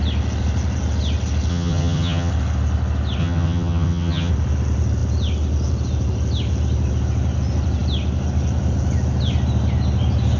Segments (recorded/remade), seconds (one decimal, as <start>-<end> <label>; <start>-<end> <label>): 0.0-1.5 recorded; 1.5-2.3 remade; 2.3-3.2 recorded; 3.2-4.3 remade; 4.3-10.4 recorded